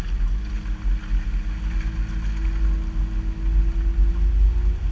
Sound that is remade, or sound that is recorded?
recorded